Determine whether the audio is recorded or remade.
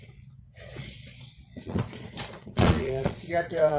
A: remade